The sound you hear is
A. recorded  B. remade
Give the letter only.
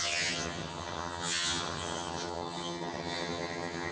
B